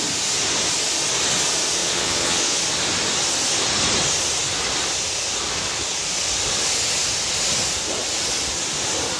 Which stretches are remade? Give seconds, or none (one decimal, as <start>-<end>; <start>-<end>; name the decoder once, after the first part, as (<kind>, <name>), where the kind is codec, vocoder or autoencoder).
1.8-2.6 (vocoder, Vocos)